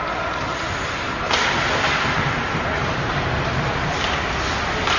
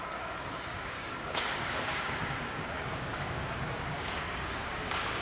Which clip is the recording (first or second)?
first